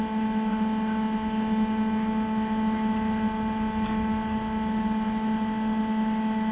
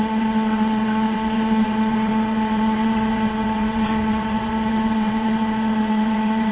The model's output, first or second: second